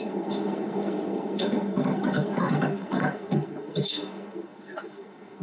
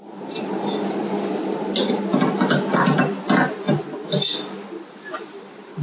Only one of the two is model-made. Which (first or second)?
first